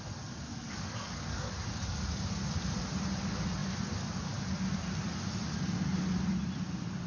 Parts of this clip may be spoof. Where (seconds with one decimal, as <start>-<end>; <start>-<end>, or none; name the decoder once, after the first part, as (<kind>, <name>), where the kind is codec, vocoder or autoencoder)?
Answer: 0.5-1.5 (codec, DAC)